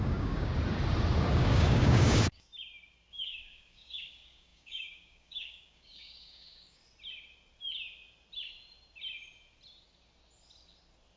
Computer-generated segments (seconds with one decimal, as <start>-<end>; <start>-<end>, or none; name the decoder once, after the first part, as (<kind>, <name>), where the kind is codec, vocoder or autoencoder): 0.0-0.5 (codec, DAC); 1.3-2.5; 3.1-6.8